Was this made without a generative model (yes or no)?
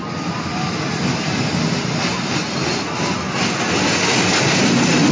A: yes